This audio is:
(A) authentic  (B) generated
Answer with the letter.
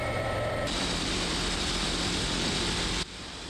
B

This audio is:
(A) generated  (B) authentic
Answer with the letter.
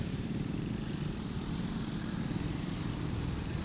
A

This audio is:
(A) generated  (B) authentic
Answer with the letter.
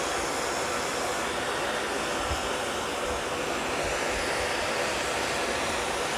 B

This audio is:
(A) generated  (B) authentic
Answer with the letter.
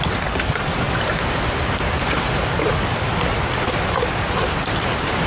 B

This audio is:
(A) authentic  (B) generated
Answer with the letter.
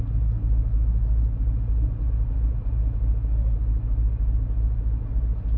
A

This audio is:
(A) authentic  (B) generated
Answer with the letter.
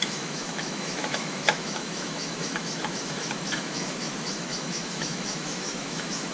B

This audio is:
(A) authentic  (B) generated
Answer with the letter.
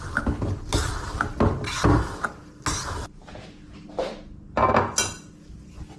A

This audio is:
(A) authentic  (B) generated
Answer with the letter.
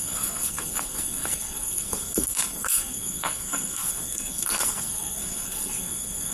B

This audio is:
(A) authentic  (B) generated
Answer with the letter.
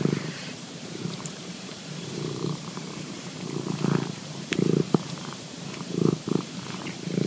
B